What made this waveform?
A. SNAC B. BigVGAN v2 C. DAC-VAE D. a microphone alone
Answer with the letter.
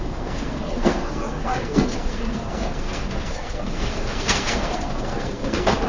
A